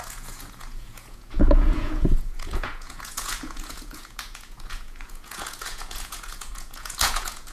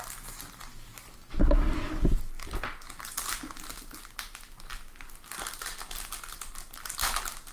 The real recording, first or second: second